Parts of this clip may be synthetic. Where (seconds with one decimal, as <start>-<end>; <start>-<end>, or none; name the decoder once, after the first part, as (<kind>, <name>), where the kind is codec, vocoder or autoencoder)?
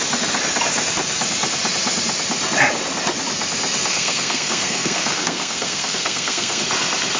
3.9-6.6 (codec, SNAC)